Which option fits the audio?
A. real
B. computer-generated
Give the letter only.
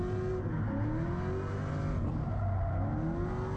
A